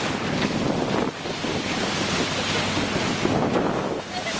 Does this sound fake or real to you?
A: real